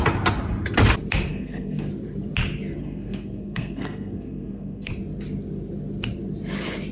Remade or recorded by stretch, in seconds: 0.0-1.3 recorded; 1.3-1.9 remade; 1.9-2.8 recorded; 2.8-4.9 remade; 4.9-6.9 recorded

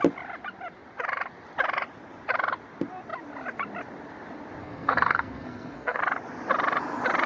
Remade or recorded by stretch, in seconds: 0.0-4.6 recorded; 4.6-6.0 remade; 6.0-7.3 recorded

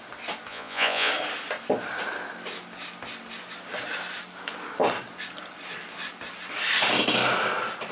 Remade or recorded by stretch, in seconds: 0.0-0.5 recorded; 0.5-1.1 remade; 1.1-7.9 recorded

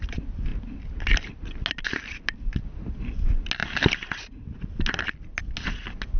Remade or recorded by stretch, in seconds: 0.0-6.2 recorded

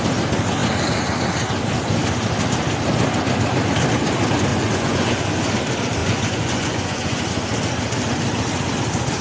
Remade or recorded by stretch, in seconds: 0.0-4.5 recorded; 4.5-5.2 remade; 5.2-6.0 recorded; 6.0-7.3 remade; 7.3-9.2 recorded

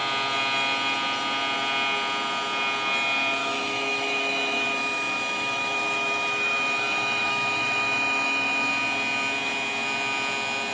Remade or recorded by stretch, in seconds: 0.0-3.4 recorded; 3.4-8.7 remade; 8.7-10.7 recorded

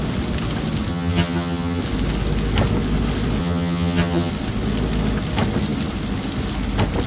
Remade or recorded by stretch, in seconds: 0.0-0.9 recorded; 0.9-1.8 remade; 1.8-3.4 recorded; 3.4-4.3 remade; 4.3-7.1 recorded